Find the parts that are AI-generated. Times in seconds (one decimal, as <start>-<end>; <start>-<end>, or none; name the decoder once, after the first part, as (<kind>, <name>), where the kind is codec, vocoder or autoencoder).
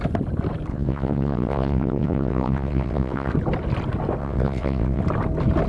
0.7-3.3 (vocoder, WaveNeXt); 4.2-5.0